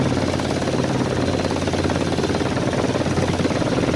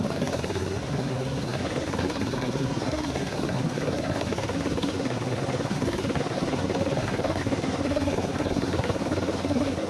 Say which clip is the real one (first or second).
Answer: first